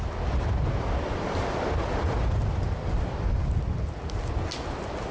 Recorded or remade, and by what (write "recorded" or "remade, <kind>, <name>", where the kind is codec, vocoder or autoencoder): recorded